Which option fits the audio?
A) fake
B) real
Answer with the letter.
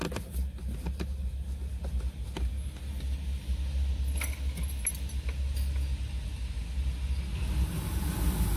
B